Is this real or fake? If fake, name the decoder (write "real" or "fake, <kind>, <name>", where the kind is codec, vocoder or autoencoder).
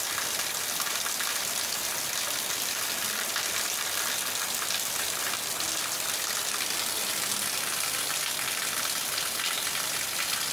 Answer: fake, vocoder, BigVGAN v2